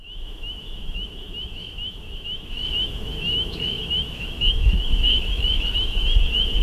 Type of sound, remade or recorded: remade